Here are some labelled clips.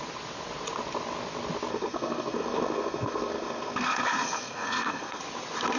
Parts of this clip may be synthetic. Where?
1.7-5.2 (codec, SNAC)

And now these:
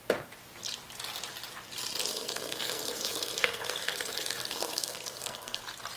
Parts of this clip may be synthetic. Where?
2.1-5.6 (codec, SNAC)